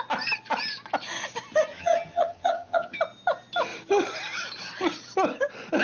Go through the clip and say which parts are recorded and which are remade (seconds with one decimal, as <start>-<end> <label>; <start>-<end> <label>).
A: 0.0-1.7 recorded; 1.7-3.0 remade; 3.0-5.8 recorded